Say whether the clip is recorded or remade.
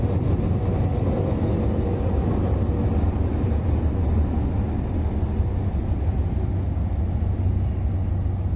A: recorded